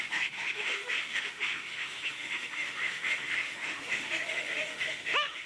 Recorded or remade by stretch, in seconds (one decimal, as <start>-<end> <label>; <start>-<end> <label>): 0.0-5.5 remade